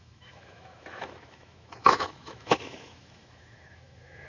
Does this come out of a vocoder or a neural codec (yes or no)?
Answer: yes